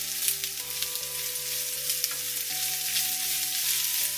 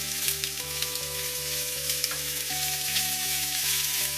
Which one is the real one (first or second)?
first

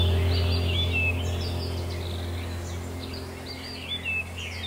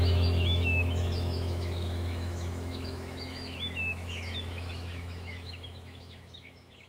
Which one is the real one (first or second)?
first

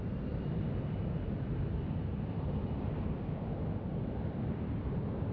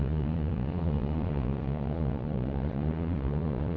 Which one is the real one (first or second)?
first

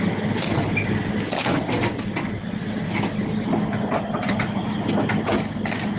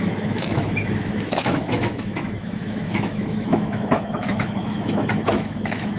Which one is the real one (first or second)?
first